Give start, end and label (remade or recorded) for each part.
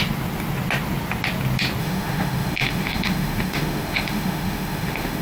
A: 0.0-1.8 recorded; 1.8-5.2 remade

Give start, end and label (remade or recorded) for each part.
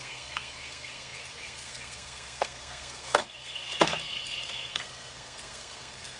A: 0.0-6.2 remade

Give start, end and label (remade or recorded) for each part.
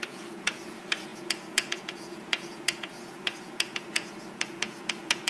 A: 0.0-5.3 remade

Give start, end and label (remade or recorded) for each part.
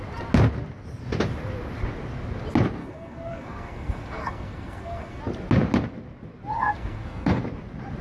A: 0.0-2.8 recorded; 2.8-5.2 remade; 5.2-6.5 recorded; 6.5-7.4 remade; 7.4-8.0 recorded